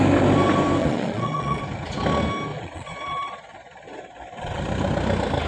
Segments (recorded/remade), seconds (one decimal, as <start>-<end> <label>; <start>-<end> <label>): 0.0-0.8 recorded; 0.8-1.6 remade; 1.6-2.5 recorded; 2.5-4.6 remade; 4.6-5.5 recorded